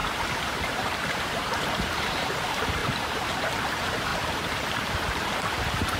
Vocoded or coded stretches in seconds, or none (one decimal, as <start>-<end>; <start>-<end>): 0.6-6.0